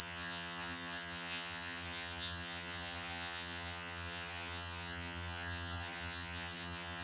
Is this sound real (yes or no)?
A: no